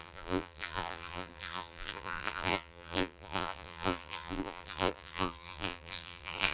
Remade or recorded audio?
remade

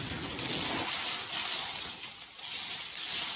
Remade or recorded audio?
recorded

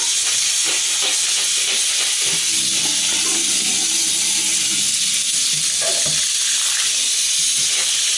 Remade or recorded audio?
recorded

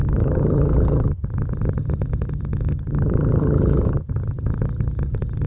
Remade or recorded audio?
remade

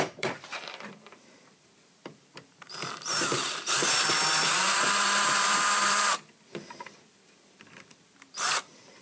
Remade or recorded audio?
remade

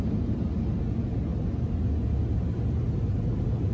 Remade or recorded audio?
recorded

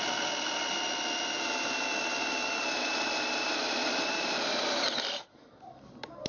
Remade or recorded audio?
recorded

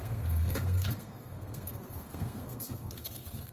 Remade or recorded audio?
remade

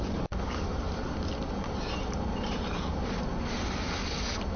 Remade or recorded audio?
recorded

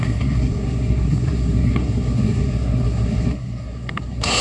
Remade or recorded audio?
remade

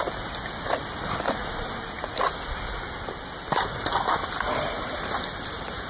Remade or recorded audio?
recorded